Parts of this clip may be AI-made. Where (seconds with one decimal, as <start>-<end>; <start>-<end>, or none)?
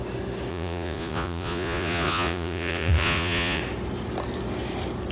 0.5-3.6